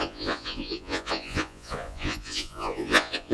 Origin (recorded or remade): remade